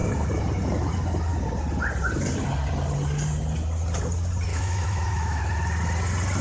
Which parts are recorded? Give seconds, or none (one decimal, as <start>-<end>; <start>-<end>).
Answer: 0.0-4.5; 5.4-6.4